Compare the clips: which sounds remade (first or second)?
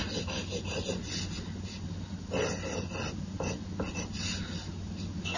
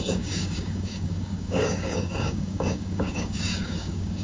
second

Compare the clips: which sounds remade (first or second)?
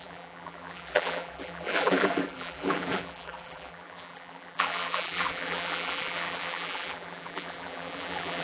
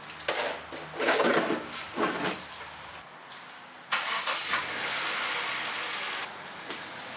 first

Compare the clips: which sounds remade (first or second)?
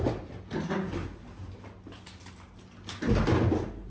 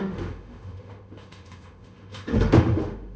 second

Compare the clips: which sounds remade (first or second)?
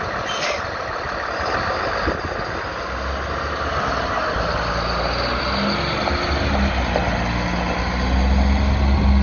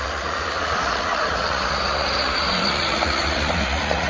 second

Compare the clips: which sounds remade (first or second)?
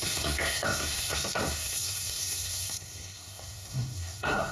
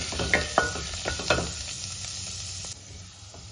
first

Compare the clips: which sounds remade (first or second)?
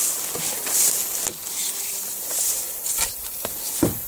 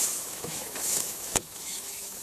second